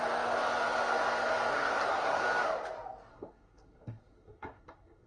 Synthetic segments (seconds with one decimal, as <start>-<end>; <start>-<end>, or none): 1.5-2.2; 3.1-5.1